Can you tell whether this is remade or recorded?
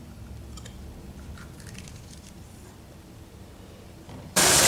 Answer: remade